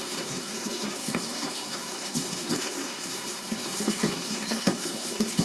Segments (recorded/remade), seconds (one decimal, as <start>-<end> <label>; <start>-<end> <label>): 0.0-5.4 remade